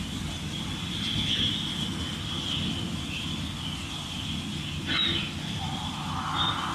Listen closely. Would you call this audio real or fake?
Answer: real